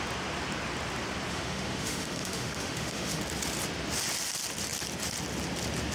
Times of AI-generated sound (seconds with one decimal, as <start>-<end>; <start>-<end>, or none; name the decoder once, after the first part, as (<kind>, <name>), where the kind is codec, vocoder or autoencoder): 1.3-3.2 (autoencoder, DAC-VAE)